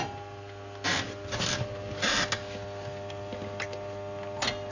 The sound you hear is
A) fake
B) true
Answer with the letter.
B